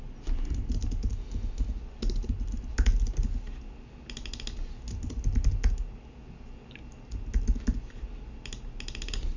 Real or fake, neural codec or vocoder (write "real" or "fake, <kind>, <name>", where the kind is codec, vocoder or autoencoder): real